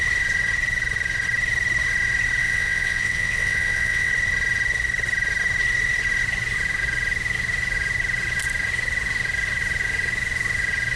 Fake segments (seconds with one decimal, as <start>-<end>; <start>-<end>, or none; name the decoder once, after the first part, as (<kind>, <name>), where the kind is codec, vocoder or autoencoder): 2.4-4.1 (vocoder, WaveNeXt)